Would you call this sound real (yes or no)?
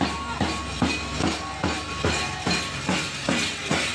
yes